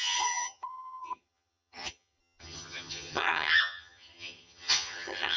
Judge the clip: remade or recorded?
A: remade